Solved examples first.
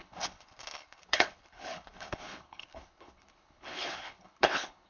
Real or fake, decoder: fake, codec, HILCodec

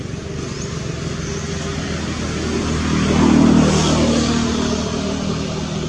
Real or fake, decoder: real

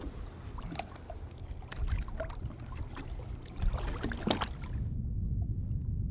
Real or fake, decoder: real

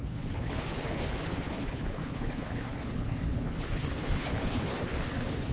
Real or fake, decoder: fake, codec, HILCodec